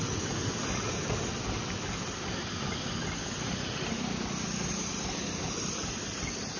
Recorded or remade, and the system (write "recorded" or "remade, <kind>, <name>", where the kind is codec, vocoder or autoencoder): remade, vocoder, BigVGAN v2